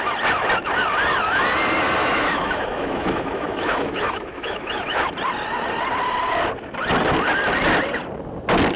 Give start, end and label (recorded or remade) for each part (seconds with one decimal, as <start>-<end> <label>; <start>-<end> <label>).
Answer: 0.0-2.0 recorded; 2.0-5.1 remade; 5.1-8.8 recorded